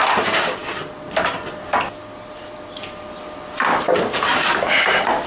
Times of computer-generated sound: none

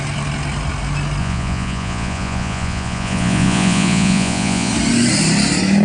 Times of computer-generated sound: 1.2-4.7 (vocoder, Vocos)

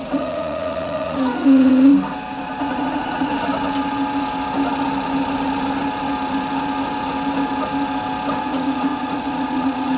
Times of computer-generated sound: 0.0-1.9 (vocoder, Vocos); 2.6-3.3; 8.4-10.0

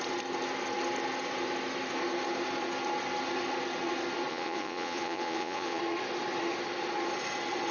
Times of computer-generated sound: 4.3-5.8 (vocoder, Vocos)

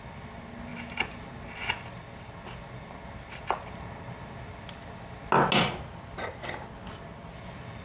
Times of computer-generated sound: none